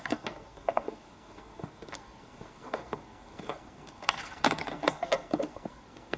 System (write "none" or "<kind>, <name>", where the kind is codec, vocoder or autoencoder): codec, SNAC